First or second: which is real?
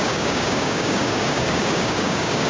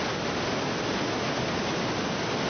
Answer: second